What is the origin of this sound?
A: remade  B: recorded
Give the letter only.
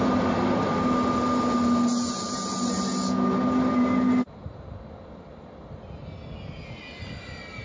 B